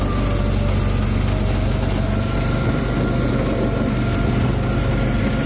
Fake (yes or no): no